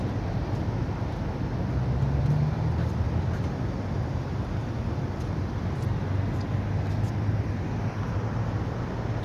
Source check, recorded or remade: recorded